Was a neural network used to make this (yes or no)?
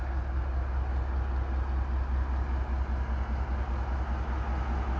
no